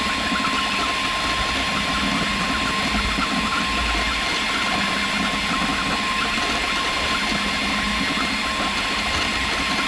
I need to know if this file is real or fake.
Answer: real